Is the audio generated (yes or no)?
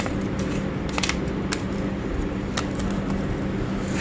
no